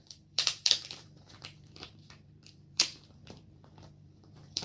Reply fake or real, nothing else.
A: fake